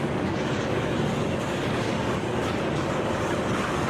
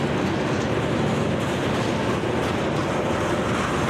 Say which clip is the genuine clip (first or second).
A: second